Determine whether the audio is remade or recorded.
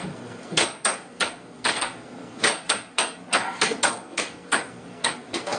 remade